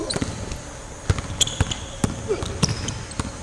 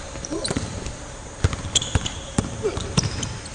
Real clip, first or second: first